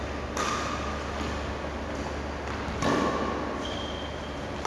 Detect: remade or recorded recorded